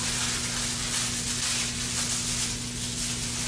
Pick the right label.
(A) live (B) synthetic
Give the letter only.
A